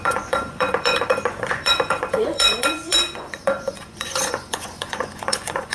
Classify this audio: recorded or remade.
remade